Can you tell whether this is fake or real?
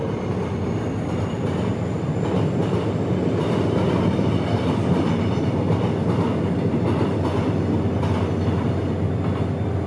real